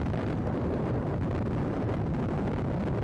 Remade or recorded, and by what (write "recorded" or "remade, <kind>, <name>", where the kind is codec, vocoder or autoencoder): recorded